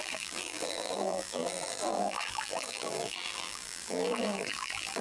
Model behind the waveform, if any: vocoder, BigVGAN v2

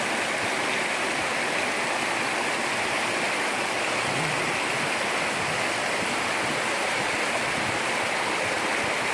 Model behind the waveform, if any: none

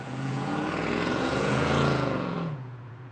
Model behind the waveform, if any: vocoder, Vocos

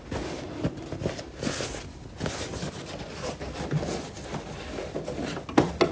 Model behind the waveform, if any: none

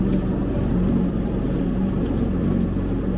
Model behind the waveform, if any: vocoder, BigVGAN v2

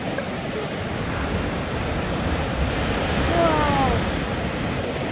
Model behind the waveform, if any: none